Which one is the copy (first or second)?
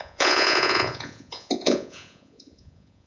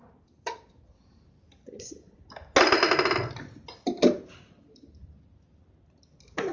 first